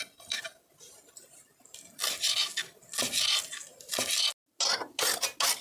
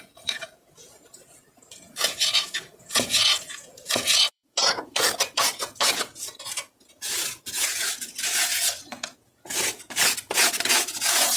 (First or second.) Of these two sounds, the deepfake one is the second